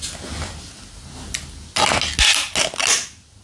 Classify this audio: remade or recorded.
recorded